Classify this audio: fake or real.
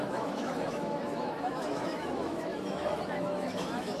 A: fake